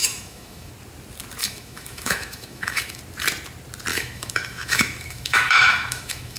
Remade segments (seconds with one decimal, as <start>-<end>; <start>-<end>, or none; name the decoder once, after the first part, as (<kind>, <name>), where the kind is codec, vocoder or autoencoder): 0.0-0.7 (autoencoder, DAC-VAE); 1.4-3.0; 3.9-6.4